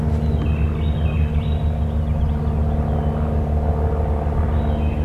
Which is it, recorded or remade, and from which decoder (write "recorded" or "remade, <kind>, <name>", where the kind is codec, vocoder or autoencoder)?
recorded